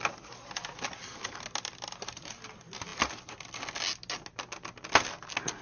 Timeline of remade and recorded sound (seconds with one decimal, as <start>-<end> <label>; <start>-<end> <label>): 0.0-5.6 recorded